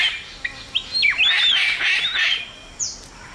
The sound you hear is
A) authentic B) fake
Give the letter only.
A